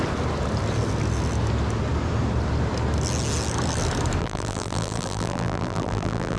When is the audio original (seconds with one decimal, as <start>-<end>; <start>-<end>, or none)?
0.0-4.2